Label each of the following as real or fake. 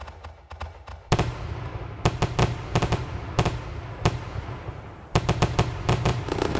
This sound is real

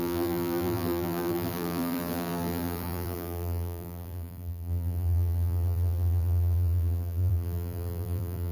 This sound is fake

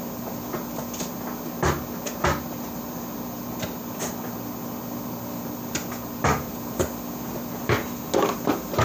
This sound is real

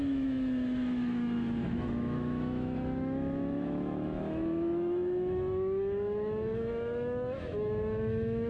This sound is fake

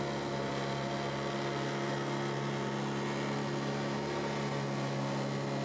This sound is real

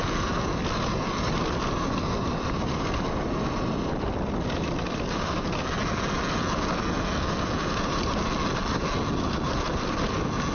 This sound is real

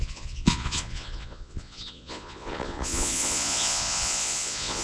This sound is fake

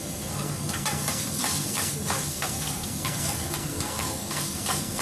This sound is fake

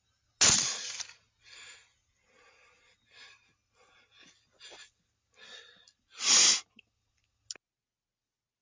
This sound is real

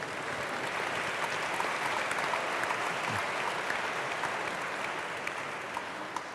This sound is real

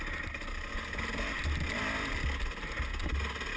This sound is real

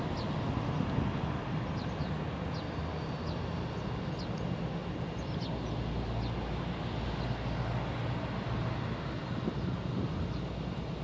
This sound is real